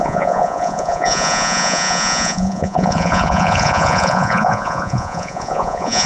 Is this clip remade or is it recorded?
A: remade